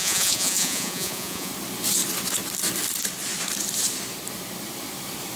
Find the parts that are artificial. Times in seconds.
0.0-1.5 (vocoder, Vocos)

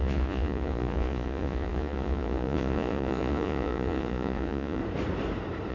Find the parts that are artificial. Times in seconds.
0.0-4.8 (vocoder, Vocos)

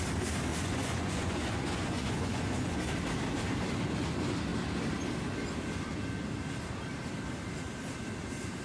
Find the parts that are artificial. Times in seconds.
0.5-2.9 (vocoder, Vocos)

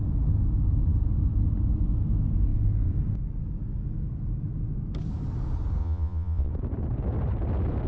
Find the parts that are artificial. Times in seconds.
5.8-6.5 (vocoder, Vocos)

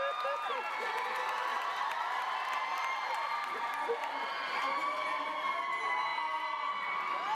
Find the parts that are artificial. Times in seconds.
1.5-4.1 (vocoder, BigVGAN v2); 4.8-5.6; 6.1-6.7

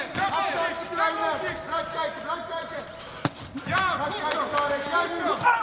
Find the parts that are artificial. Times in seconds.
none

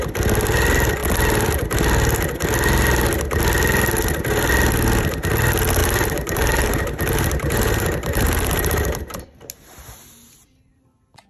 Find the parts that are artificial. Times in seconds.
5.8-9.2 (vocoder, BigVGAN v2)

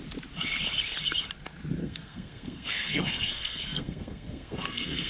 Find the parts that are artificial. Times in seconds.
1.8-5.1 (codec, SNAC)